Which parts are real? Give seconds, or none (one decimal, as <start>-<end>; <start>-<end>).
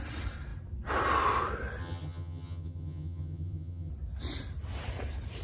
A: 0.0-1.8; 3.9-5.4